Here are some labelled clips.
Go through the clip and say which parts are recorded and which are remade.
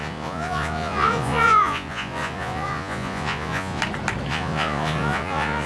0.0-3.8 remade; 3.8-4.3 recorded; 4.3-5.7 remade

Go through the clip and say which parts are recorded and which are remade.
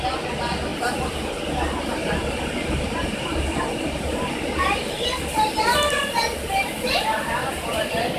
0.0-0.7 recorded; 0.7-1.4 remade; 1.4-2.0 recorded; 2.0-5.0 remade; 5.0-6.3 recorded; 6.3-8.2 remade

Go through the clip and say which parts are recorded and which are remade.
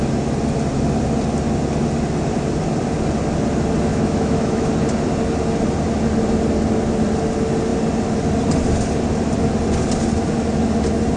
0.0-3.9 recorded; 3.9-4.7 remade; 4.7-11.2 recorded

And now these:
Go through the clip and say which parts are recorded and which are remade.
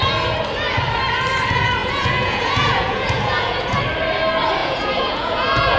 0.0-1.8 recorded; 1.8-3.8 remade; 3.8-4.6 recorded; 4.6-5.8 remade